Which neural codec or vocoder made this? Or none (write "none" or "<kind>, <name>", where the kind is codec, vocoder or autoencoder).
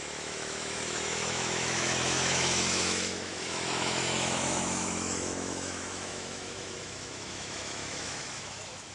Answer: autoencoder, DAC-VAE